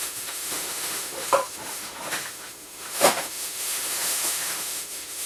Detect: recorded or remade remade